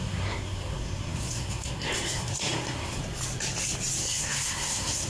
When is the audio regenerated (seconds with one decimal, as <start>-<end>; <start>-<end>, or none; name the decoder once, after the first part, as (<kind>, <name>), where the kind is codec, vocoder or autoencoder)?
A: 0.0-3.0 (codec, SNAC); 4.0-5.1